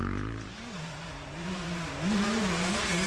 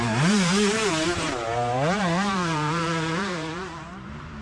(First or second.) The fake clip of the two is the second